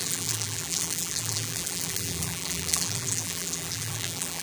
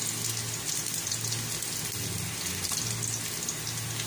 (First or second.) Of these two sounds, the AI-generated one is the first